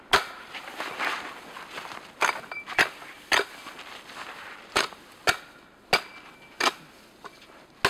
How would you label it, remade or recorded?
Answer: recorded